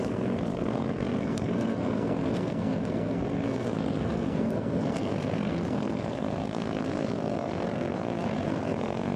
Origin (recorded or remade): remade